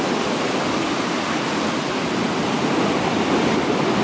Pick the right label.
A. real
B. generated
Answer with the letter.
A